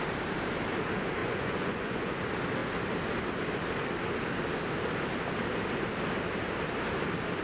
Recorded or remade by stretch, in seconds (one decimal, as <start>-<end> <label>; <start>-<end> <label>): 0.0-1.2 recorded; 1.2-2.2 remade; 2.2-7.4 recorded